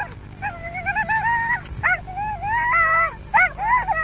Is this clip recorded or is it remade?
recorded